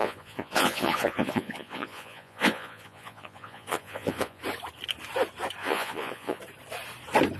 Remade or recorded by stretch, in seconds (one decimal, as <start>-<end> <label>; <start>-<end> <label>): 0.0-4.4 remade; 4.4-5.6 recorded; 5.6-6.4 remade; 6.4-7.4 recorded